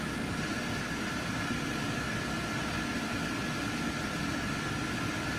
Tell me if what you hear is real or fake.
real